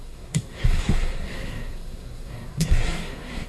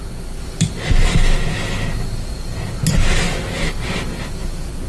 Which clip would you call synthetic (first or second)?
first